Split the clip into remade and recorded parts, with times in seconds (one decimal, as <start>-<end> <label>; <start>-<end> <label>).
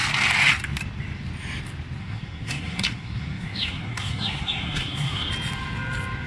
0.0-2.0 recorded; 2.0-5.3 remade; 5.3-6.3 recorded